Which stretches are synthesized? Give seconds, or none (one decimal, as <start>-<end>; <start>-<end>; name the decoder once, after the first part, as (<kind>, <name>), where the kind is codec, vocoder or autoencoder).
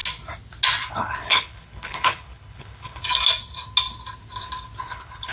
0.9-3.0 (codec, HILCodec); 4.8-5.3